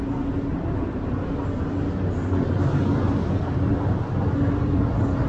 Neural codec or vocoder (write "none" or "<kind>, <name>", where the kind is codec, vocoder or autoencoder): none